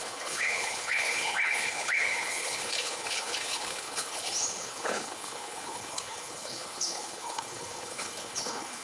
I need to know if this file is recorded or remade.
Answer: remade